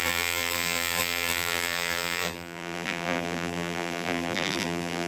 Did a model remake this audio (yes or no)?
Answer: yes